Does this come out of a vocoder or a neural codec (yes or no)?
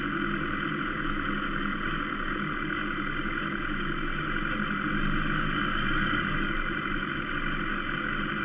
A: no